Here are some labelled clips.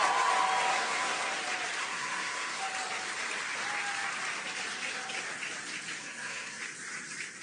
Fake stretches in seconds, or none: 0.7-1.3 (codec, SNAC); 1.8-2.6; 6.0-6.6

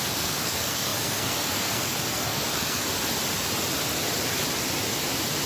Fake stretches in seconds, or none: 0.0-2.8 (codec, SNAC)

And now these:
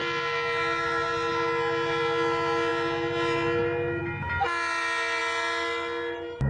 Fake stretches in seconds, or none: none

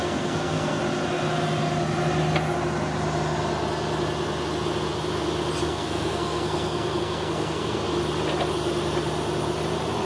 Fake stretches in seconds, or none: 0.0-0.8 (codec, SNAC); 5.6-7.8

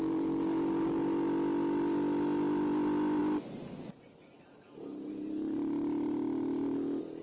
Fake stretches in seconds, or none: none

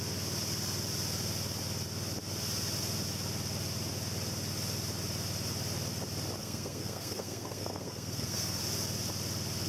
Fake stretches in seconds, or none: 6.4-8.6 (codec, SNAC)

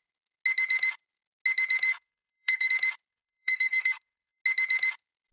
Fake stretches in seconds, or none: 1.9-2.7 (codec, SNAC); 3.1-4.4